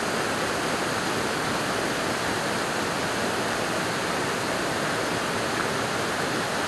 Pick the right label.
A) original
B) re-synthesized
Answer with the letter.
A